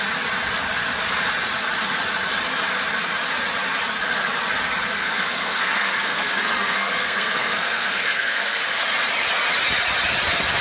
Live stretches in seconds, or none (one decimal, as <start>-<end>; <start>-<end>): 0.0-5.0; 8.6-10.6